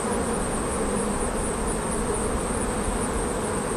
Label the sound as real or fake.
real